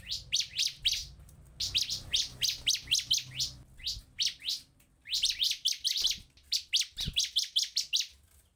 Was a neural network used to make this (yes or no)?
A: no